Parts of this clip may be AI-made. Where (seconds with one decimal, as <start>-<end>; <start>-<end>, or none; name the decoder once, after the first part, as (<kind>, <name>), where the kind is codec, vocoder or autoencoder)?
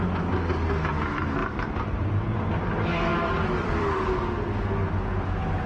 1.4-2.1 (vocoder, BigVGAN v2); 3.1-4.2